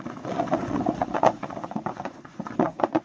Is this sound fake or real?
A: fake